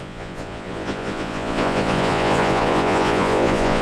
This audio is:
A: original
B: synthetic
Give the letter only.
B